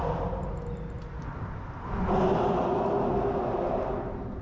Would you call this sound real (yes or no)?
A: yes